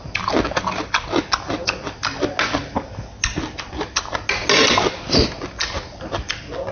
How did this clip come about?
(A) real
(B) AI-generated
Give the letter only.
A